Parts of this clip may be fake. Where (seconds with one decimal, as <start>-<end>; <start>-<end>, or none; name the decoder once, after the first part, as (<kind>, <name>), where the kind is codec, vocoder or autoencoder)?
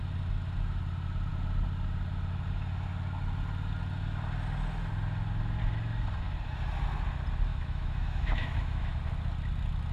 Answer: 7.5-9.0 (autoencoder, DAC-VAE)